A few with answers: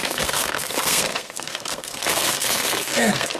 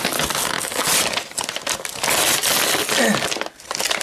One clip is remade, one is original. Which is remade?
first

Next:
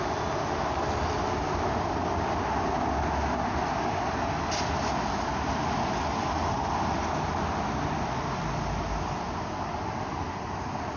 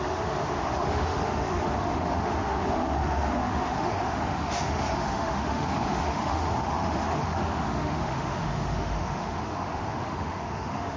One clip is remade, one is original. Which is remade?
second